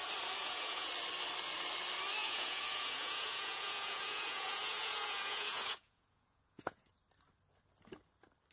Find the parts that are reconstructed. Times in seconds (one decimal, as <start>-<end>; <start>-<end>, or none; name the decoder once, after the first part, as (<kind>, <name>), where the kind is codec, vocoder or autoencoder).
0.4-0.9 (vocoder, Vocos); 2.2-6.9